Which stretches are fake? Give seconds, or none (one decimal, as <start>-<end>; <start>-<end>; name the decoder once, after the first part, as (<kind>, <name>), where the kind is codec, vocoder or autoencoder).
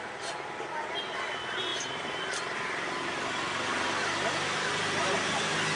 none